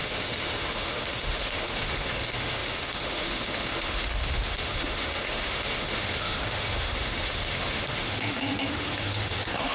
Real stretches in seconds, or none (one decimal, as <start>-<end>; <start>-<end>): none